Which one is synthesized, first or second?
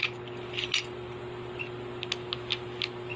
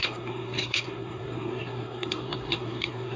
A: second